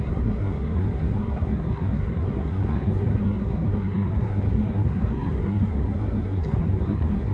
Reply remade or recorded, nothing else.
remade